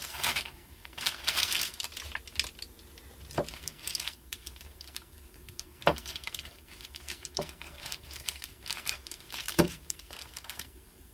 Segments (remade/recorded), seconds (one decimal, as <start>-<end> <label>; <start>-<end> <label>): 0.0-1.9 remade; 1.9-3.5 recorded; 3.5-11.1 remade